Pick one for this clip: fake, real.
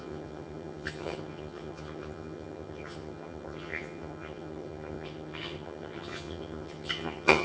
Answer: fake